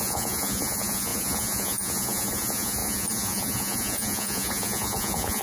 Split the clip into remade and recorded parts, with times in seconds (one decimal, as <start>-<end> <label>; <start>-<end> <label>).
0.0-5.4 remade